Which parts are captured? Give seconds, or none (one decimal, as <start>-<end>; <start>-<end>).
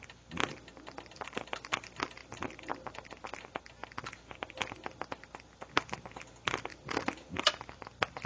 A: 0.0-6.7; 7.5-8.3